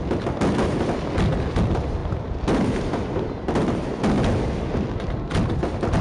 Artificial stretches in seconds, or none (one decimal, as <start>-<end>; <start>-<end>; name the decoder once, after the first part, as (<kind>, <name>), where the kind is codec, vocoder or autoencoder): none